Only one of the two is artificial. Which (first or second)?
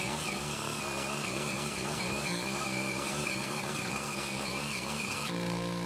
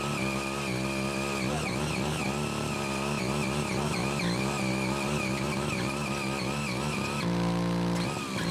first